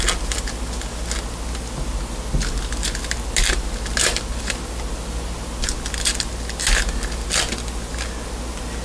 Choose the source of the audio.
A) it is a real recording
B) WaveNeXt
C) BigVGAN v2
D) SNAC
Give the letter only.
A